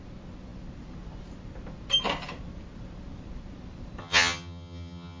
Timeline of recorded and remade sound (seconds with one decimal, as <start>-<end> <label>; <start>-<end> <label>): 0.0-4.0 recorded; 4.0-5.2 remade